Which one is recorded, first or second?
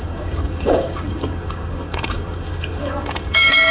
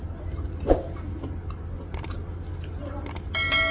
second